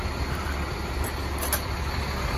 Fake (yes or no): no